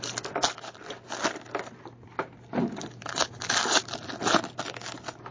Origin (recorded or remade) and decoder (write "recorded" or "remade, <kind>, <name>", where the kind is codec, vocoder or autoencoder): recorded